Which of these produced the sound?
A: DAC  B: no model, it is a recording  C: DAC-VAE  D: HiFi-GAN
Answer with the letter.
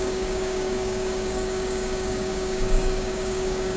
A